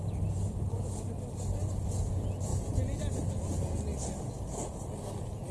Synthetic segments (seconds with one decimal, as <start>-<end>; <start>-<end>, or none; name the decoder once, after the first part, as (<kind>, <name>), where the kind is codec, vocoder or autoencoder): none